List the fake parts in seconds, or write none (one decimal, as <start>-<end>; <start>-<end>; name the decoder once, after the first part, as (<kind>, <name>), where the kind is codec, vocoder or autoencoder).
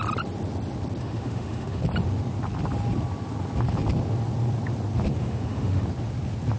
1.0-1.8 (autoencoder, DAC-VAE); 5.2-5.8